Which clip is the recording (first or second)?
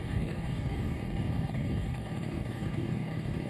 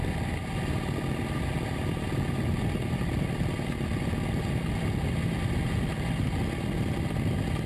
second